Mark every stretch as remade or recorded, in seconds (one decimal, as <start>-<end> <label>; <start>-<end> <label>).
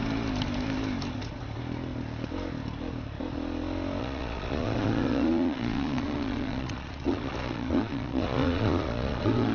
0.0-4.0 recorded; 4.0-9.5 remade